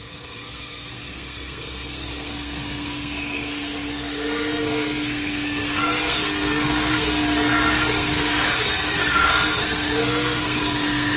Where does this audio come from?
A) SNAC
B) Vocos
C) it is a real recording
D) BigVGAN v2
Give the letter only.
A